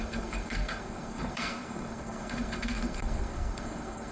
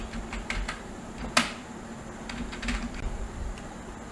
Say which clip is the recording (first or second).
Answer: second